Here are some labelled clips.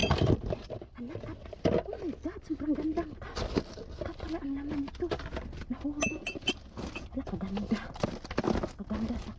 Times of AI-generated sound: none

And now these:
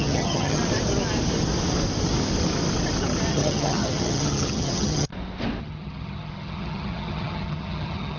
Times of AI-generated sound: 0.0-0.6 (vocoder, HiFi-GAN); 3.3-5.1; 5.6-8.2

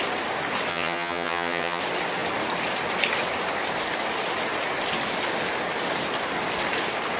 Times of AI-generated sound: 0.7-1.8 (vocoder, HiFi-GAN)

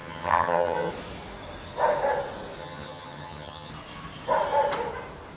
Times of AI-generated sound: 0.0-0.9 (vocoder, HiFi-GAN); 2.6-3.7

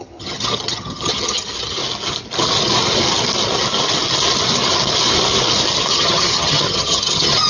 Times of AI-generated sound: 0.0-1.8 (vocoder, HiFi-GAN); 5.9-7.5

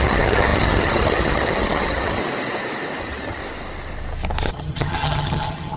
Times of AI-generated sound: 0.0-2.2 (vocoder, HiFi-GAN); 3.0-3.4; 4.5-5.8

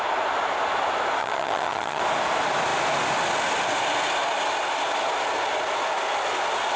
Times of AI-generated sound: 1.2-2.0 (vocoder, HiFi-GAN)